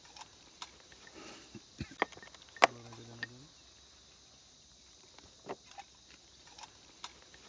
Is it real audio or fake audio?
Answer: real